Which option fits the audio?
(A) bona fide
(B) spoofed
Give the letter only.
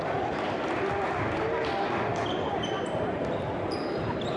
B